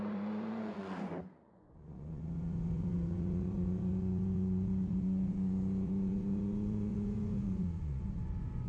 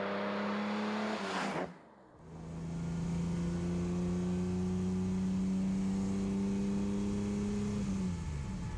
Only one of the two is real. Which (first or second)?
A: second